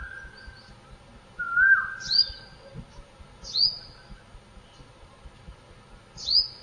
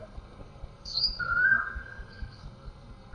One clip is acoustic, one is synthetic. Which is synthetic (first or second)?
second